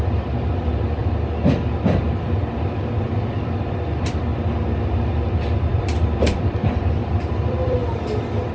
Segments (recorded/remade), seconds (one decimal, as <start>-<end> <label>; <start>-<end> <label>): 0.0-1.0 remade; 1.0-2.0 recorded; 2.0-4.3 remade; 4.3-5.1 recorded; 5.1-7.8 remade; 7.8-8.5 recorded